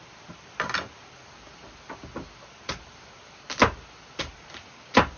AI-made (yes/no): no